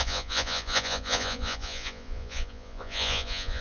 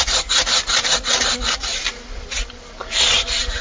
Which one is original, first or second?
second